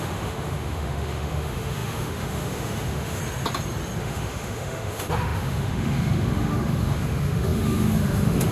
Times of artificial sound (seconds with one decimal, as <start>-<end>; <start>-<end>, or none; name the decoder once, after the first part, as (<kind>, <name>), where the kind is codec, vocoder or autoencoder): 0.0-3.2 (autoencoder, DAC-VAE); 4.0-8.5

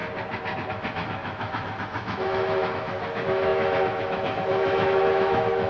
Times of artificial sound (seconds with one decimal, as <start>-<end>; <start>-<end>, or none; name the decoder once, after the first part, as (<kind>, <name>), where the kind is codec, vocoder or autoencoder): 0.7-5.7 (autoencoder, DAC-VAE)

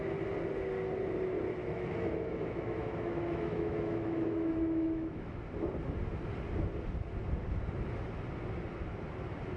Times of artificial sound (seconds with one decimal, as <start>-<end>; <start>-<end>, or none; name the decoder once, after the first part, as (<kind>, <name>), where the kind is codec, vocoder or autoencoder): 1.6-5.3 (autoencoder, DAC-VAE)

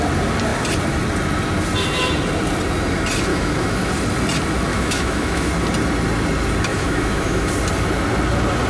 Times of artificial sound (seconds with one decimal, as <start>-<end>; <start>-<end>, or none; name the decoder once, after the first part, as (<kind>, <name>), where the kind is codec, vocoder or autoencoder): 3.3-3.9 (autoencoder, DAC-VAE); 4.7-5.5; 6.7-7.5

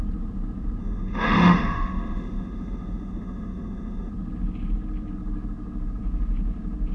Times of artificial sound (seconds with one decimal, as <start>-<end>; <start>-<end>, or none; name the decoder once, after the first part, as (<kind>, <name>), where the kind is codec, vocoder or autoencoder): 0.8-4.1 (autoencoder, DAC-VAE)

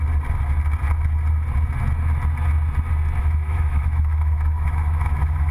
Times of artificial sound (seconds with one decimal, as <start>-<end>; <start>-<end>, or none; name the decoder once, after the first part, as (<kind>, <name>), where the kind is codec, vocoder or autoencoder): 3.2-5.5 (autoencoder, DAC-VAE)